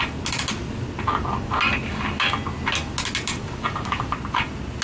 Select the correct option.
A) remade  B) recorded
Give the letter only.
B